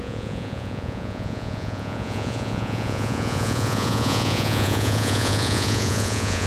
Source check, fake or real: fake